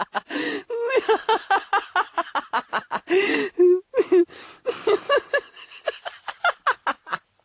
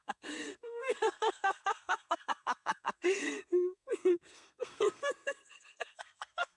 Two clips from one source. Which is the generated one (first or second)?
second